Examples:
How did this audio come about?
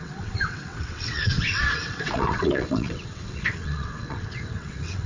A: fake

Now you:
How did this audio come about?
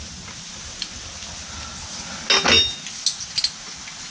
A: real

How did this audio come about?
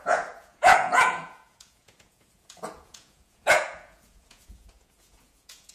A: fake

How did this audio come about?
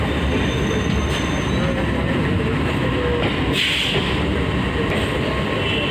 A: real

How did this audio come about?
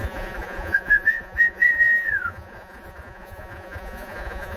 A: fake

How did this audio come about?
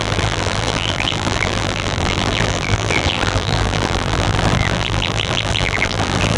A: fake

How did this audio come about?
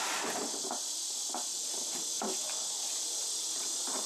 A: real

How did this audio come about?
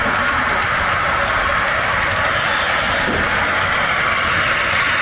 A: real